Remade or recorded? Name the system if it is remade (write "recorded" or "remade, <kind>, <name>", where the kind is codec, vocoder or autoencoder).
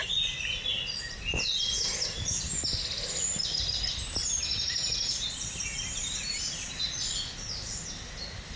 recorded